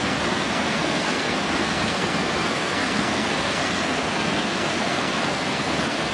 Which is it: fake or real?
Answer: fake